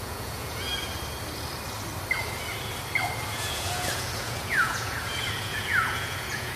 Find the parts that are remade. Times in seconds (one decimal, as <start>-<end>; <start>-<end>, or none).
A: 0.0-0.7; 3.3-6.6